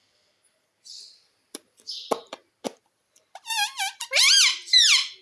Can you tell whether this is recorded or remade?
remade